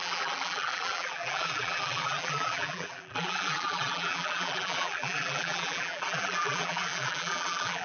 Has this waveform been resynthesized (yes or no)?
yes